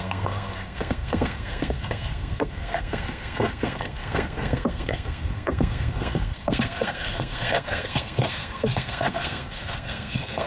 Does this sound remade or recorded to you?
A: remade